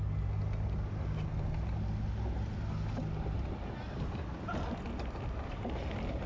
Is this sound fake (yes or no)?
no